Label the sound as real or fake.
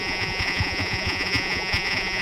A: fake